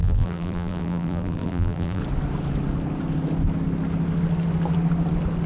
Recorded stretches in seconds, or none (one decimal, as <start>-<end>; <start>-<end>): 2.0-5.5